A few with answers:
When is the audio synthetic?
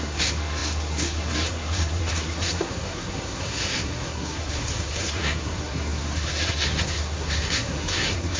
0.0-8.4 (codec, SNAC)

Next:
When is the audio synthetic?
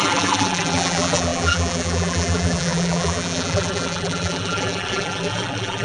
0.0-5.8 (vocoder, BigVGAN v2)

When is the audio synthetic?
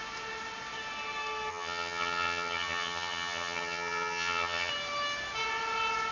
1.5-4.7 (vocoder, HiFi-GAN)